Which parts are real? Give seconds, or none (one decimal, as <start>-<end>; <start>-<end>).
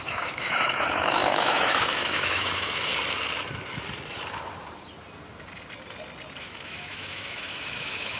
2.9-6.4